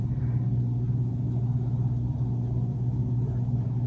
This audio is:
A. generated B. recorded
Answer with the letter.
B